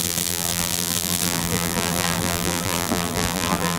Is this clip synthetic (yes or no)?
yes